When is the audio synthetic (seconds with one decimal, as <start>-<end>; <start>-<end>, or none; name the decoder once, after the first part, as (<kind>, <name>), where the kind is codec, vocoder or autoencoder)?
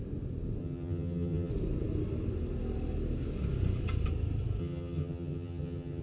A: 0.6-1.5 (vocoder, HiFi-GAN); 4.6-6.0